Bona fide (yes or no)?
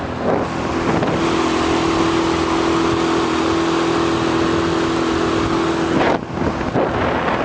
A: yes